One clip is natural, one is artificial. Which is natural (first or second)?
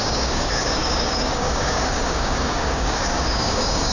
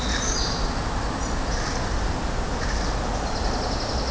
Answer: second